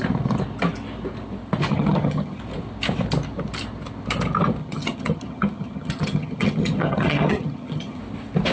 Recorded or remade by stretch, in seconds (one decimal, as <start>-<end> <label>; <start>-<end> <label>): 0.0-1.7 recorded; 1.7-2.4 remade; 2.4-4.6 recorded; 4.6-8.0 remade; 8.0-8.5 recorded